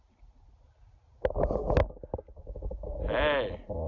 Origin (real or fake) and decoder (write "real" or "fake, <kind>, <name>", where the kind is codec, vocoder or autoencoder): real